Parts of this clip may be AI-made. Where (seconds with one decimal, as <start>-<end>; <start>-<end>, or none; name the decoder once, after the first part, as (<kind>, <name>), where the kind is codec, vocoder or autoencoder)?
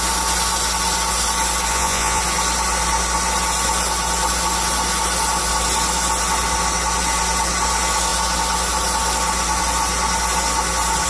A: 1.7-2.2 (vocoder, Vocos)